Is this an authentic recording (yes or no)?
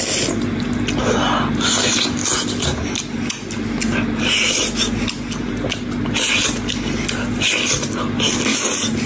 yes